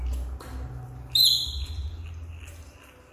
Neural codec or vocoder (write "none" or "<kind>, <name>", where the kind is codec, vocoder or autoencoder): none